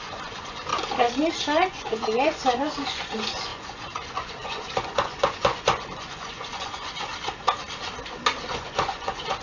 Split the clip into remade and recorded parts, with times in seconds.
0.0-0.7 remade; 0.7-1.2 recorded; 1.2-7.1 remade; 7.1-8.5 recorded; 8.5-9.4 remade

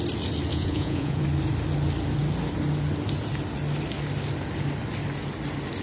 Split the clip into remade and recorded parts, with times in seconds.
0.0-0.5 recorded; 0.5-1.2 remade; 1.2-5.8 recorded